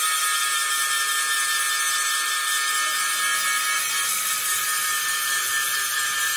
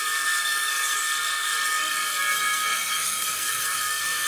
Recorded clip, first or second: first